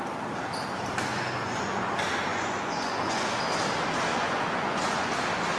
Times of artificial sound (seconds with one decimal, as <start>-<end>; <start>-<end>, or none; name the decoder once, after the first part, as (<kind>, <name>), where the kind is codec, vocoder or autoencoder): 1.1-1.9 (vocoder, Vocos); 2.3-3.3; 4.1-5.1